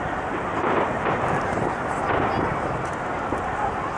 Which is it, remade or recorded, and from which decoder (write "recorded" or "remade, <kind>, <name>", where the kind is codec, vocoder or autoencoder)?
recorded